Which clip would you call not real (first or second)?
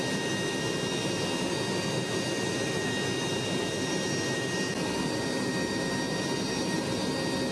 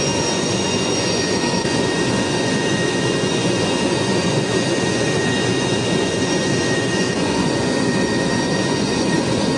second